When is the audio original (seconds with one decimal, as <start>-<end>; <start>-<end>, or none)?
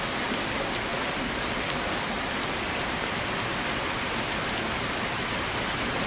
0.0-6.1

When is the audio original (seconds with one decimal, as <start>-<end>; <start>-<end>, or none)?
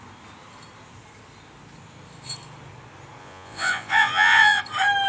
0.0-3.2; 4.6-5.1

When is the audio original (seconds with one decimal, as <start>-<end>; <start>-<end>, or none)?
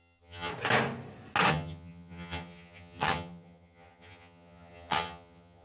0.5-1.5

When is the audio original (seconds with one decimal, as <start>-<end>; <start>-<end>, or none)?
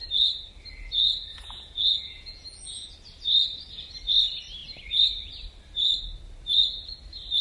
0.0-1.3; 2.9-7.4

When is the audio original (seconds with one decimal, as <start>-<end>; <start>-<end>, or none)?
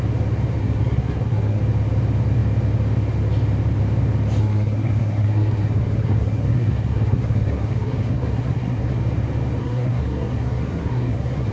0.0-0.6; 1.6-4.4; 9.0-9.6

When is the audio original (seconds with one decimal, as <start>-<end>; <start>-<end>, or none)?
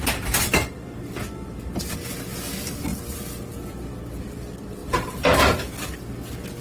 0.0-4.8; 5.4-6.6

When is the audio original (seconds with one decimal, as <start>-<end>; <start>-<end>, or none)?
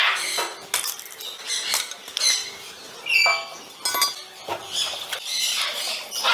0.0-2.0; 2.7-4.5; 5.1-6.3